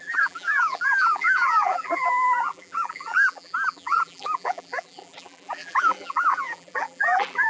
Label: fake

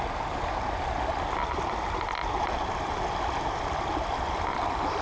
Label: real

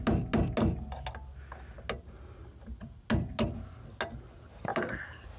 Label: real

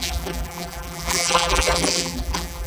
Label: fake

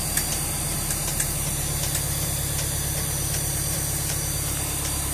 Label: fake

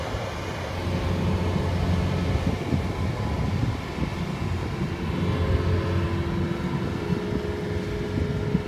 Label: real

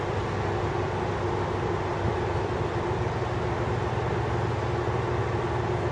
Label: real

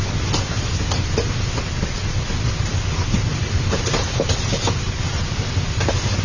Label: real